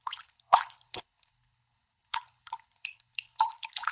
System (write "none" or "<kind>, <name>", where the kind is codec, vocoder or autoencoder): codec, HILCodec